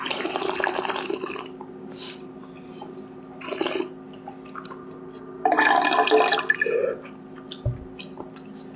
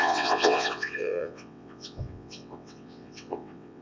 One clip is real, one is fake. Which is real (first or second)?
first